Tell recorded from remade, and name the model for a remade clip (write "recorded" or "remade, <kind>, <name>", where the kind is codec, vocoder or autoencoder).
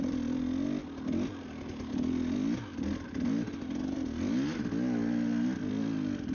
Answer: recorded